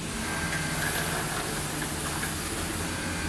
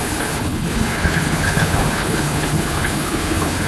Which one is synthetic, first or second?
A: second